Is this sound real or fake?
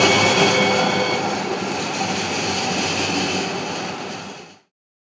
real